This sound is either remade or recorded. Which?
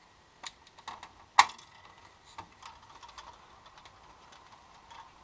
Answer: recorded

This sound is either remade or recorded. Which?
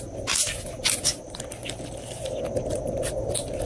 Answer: recorded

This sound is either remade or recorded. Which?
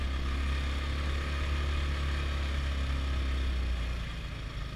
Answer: recorded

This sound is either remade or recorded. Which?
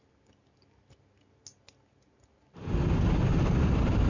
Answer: recorded